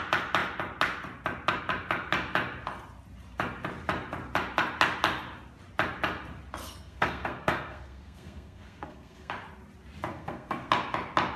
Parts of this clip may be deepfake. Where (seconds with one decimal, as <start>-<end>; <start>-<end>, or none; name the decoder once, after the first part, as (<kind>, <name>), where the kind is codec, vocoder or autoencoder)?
6.6-9.3 (codec, SNAC); 10.1-10.7